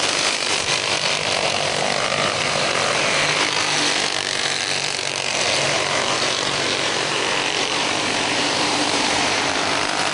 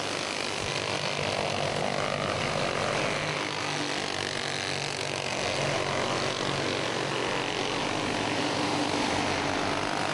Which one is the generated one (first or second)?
first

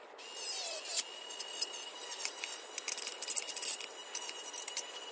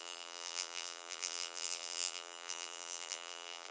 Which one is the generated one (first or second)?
second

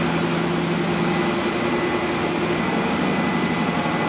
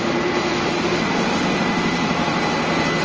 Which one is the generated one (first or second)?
second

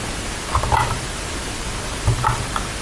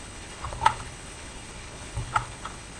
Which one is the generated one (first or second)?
second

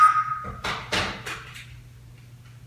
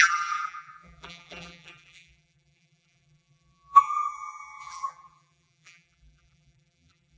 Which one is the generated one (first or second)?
second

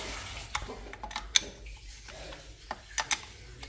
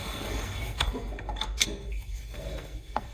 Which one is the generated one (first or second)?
second